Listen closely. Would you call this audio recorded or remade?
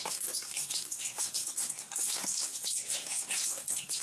remade